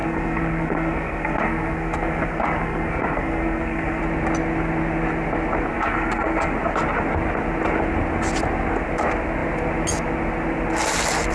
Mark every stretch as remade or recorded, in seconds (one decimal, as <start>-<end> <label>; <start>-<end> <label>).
0.0-4.0 remade; 4.0-5.7 recorded; 5.7-6.5 remade; 6.5-11.3 recorded